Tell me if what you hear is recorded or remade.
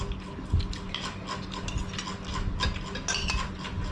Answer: recorded